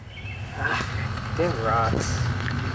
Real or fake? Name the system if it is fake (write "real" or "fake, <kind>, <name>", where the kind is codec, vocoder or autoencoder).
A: real